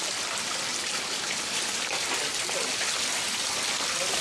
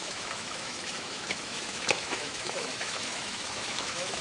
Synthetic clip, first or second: second